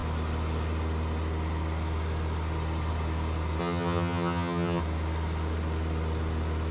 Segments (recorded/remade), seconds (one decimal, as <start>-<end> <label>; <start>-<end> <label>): 0.0-3.6 recorded; 3.6-4.8 remade; 4.8-6.7 recorded